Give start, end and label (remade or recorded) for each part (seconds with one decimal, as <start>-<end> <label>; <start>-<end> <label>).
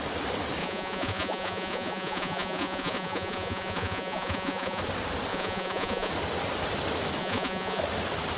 0.0-0.6 recorded; 0.6-4.8 remade; 4.8-5.3 recorded; 5.3-6.1 remade; 6.1-7.2 recorded; 7.2-7.8 remade; 7.8-8.4 recorded